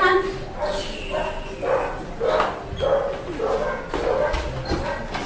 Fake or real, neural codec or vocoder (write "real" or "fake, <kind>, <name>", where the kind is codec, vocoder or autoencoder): real